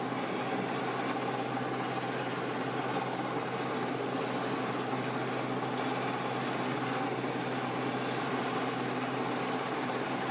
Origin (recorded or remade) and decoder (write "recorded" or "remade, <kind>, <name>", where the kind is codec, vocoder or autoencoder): recorded